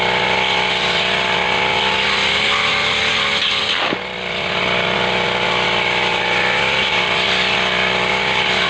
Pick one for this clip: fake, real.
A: real